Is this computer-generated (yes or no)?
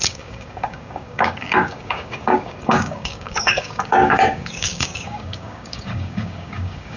yes